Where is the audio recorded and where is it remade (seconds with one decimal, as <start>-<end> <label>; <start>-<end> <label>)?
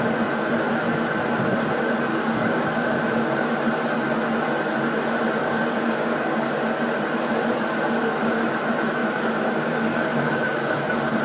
0.0-2.1 recorded; 2.1-3.0 remade; 3.0-5.4 recorded; 5.4-6.5 remade; 6.5-9.0 recorded; 9.0-11.2 remade